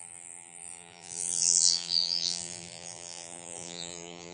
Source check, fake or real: fake